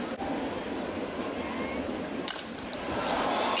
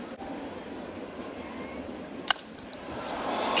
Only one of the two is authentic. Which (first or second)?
first